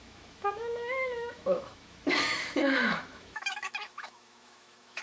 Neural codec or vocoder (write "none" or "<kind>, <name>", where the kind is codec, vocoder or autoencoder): autoencoder, DAC-VAE